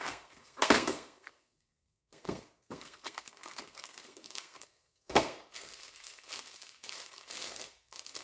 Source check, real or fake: fake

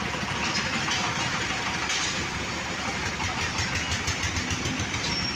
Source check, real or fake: real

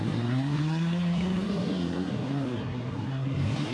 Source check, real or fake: fake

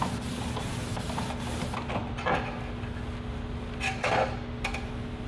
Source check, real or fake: real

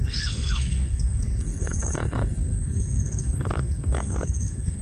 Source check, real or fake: fake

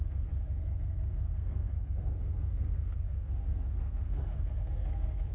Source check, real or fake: fake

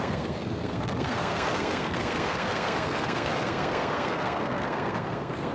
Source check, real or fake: fake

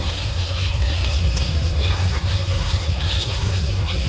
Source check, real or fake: fake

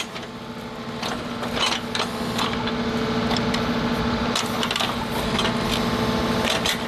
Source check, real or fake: real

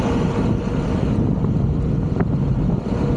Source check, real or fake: real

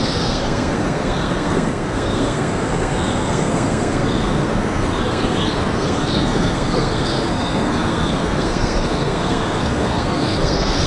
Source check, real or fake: fake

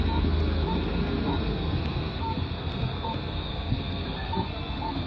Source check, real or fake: fake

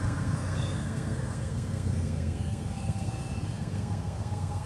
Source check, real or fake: fake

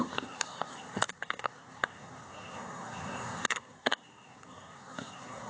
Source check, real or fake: fake